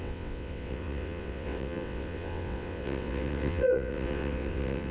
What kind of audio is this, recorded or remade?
remade